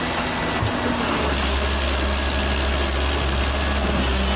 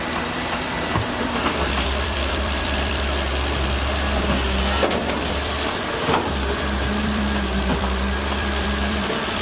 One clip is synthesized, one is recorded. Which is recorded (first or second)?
first